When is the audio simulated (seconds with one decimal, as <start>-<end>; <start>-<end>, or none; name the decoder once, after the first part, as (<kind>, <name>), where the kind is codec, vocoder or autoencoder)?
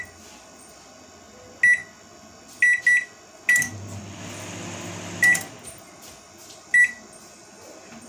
none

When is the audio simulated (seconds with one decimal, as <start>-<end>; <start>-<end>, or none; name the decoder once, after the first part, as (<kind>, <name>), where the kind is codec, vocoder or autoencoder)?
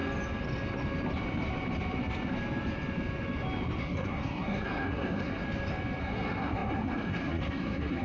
3.8-5.4 (codec, SNAC); 6.0-8.0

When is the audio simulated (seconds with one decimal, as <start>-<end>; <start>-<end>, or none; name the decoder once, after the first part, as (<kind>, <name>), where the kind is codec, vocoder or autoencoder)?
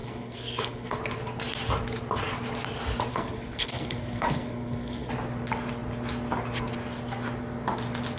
0.0-1.0 (codec, SNAC); 3.1-5.1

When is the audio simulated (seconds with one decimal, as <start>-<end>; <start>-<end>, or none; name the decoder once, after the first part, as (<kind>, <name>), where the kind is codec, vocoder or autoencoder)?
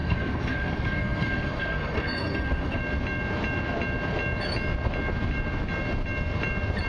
0.0-2.8 (codec, SNAC)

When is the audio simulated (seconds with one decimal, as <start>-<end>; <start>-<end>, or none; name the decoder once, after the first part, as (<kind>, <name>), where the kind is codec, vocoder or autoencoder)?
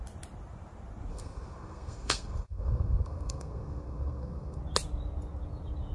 1.1-4.6 (codec, SNAC)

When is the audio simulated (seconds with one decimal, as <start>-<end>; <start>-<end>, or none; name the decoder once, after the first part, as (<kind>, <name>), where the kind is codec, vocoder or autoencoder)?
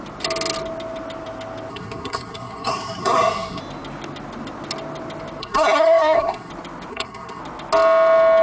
1.7-3.6 (codec, SNAC); 5.4-6.5; 6.9-7.4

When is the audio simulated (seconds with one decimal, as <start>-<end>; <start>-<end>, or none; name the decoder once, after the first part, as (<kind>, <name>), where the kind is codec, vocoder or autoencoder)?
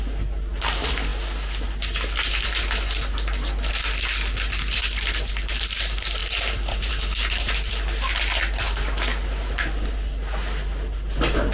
none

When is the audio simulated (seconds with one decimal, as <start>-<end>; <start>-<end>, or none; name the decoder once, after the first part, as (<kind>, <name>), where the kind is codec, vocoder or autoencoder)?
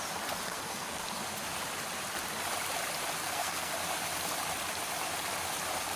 0.5-1.0 (codec, SNAC); 3.2-3.7